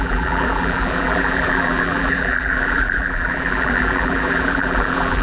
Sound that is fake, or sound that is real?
fake